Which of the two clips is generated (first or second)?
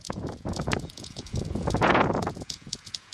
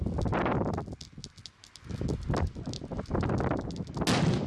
first